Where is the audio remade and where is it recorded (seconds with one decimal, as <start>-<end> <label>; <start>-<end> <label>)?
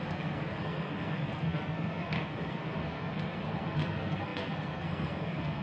0.0-5.6 remade